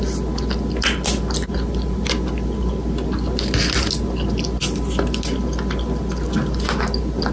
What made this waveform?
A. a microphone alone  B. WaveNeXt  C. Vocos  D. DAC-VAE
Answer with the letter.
A